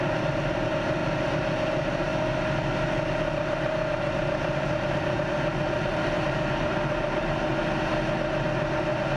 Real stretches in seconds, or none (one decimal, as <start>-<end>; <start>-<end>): 0.0-9.2